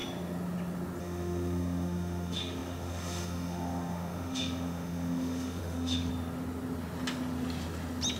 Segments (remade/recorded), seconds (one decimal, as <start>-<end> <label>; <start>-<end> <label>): 0.0-1.0 recorded; 1.0-6.1 remade; 6.1-8.2 recorded